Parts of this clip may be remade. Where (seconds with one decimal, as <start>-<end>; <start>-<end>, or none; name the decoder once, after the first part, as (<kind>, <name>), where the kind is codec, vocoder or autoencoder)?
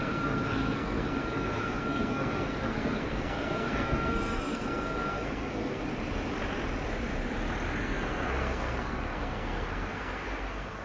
0.0-5.8 (codec, SNAC); 7.8-10.8